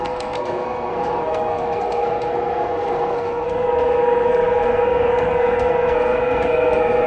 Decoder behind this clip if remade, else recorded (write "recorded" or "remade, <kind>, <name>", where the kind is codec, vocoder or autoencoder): remade, codec, SNAC